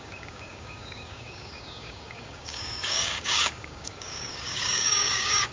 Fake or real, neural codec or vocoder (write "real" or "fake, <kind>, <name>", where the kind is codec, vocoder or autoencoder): fake, codec, DAC